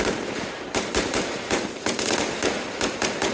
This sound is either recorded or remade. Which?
recorded